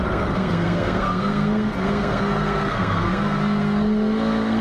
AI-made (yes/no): yes